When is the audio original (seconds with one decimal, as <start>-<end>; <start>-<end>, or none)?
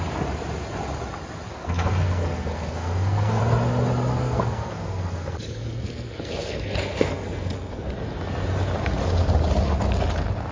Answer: 0.0-1.5; 3.4-4.1; 7.9-10.5